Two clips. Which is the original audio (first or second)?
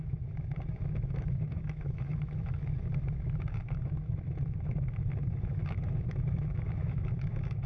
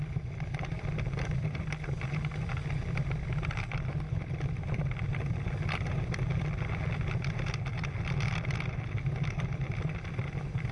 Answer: second